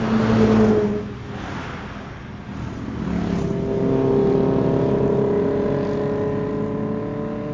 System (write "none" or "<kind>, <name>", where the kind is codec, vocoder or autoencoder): none